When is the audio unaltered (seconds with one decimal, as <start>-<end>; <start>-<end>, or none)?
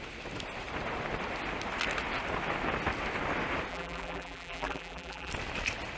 0.0-3.7; 5.3-6.0